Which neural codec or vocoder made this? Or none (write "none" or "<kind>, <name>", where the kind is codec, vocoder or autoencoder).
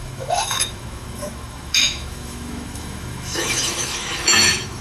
autoencoder, DAC-VAE